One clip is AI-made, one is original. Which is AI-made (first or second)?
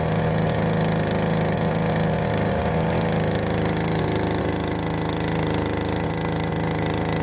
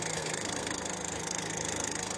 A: second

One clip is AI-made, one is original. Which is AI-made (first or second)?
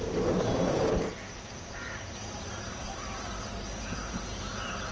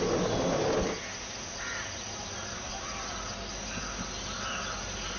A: first